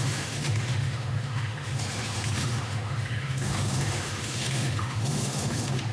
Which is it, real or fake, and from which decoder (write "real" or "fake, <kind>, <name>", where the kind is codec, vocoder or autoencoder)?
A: fake, autoencoder, DAC-VAE